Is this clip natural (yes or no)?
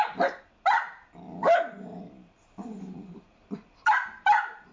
no